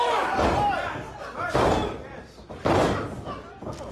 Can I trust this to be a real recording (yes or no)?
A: yes